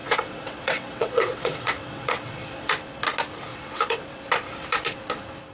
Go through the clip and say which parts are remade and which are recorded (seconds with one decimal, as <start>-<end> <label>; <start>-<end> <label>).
0.0-2.7 remade; 2.7-3.5 recorded; 3.5-4.0 remade; 4.0-5.5 recorded